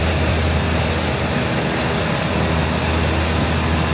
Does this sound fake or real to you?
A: real